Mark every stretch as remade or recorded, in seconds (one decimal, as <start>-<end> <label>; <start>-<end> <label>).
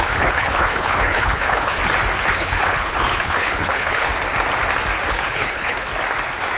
0.0-1.8 remade; 1.8-2.3 recorded; 2.3-4.1 remade; 4.1-5.1 recorded; 5.1-5.9 remade; 5.9-6.6 recorded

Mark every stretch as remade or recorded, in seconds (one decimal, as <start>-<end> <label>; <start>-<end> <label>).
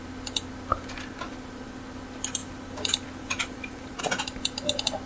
0.0-2.4 recorded; 2.4-4.0 remade; 4.0-5.1 recorded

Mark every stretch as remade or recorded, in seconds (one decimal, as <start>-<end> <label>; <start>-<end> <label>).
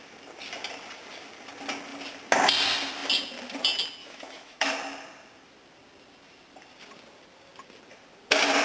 0.0-4.0 recorded; 4.0-4.7 remade; 4.7-8.6 recorded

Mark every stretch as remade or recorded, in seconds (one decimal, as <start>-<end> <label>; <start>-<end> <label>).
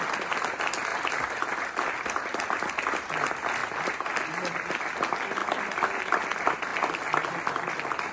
0.0-8.1 recorded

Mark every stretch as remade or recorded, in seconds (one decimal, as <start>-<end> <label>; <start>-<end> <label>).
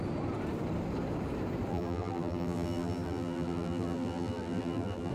0.0-1.7 recorded; 1.7-5.1 remade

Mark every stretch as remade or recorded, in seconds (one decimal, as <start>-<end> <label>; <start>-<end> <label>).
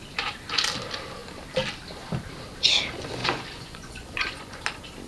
0.0-3.2 recorded; 3.2-4.6 remade; 4.6-5.1 recorded